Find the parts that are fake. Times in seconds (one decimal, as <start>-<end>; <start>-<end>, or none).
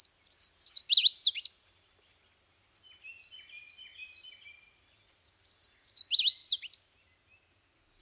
none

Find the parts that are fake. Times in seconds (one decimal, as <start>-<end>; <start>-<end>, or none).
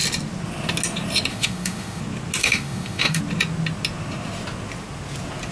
1.3-2.0; 2.4-3.2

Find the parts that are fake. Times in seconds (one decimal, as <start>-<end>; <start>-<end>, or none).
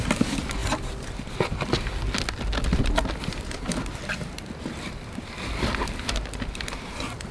none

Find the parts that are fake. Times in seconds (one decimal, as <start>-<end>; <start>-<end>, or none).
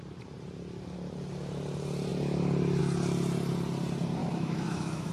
4.2-5.1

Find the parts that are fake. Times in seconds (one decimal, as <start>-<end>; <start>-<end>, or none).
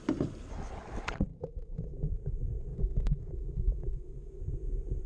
1.3-2.0; 2.7-4.4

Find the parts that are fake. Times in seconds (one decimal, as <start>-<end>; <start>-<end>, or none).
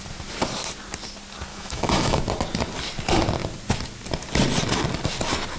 1.5-2.2